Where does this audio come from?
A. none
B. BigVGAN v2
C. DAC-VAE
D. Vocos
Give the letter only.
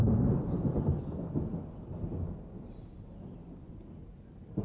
A